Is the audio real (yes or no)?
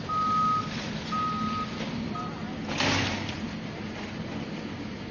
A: yes